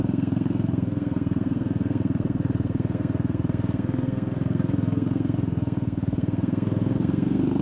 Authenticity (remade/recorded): remade